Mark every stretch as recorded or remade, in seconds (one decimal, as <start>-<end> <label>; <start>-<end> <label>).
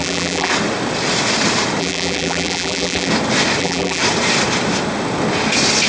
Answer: 0.0-0.5 remade; 0.5-1.8 recorded; 1.8-3.1 remade; 3.1-3.6 recorded; 3.6-4.0 remade; 4.0-5.9 recorded